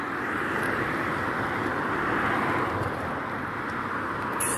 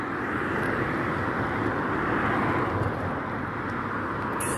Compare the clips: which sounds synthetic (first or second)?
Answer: first